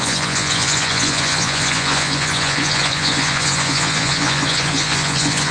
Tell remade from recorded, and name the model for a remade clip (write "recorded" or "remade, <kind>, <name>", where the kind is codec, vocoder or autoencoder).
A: remade, vocoder, Vocos